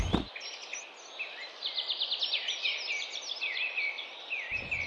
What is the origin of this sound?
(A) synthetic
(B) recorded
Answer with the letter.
B